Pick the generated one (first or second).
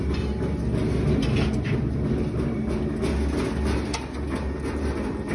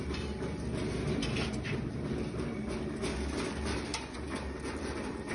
second